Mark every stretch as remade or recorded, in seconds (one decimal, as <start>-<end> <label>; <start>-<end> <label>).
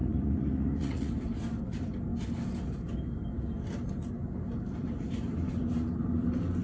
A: 0.0-1.1 remade; 1.1-6.6 recorded